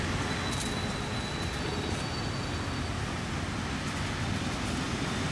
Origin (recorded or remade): recorded